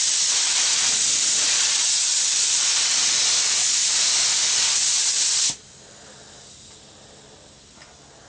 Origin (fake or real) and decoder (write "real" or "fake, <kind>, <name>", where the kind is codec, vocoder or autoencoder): real